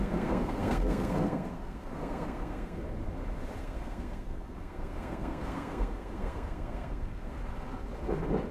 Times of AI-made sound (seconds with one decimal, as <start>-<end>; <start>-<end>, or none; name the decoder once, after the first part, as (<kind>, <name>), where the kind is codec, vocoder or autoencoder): 0.0-2.8 (codec, SNAC); 3.6-7.4